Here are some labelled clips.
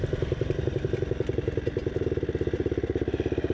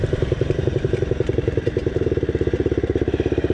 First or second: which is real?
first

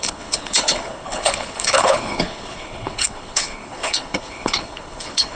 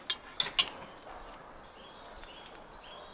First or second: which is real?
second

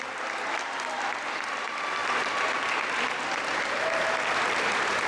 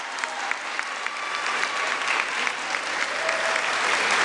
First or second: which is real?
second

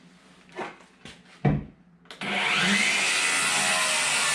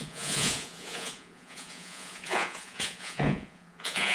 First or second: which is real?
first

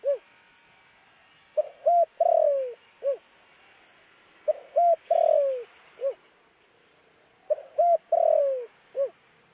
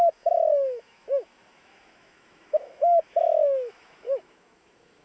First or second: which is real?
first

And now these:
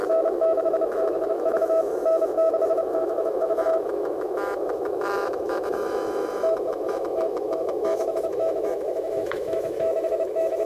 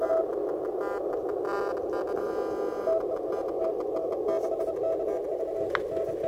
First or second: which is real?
second